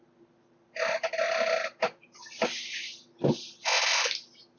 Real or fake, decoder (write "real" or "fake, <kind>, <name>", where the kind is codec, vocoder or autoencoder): real